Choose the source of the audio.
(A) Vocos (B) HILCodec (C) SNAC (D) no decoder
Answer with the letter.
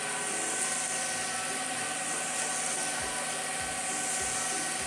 D